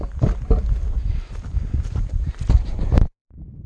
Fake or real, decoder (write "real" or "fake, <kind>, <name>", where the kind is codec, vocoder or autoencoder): fake, vocoder, BigVGAN v2